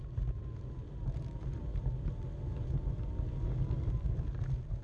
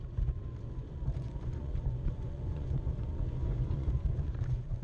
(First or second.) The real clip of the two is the first